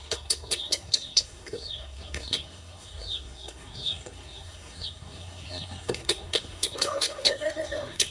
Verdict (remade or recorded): remade